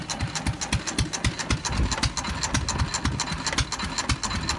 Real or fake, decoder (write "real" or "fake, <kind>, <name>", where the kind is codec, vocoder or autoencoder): real